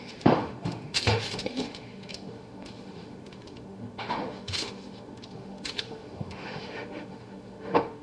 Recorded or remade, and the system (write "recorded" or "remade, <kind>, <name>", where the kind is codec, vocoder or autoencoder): remade, autoencoder, DAC-VAE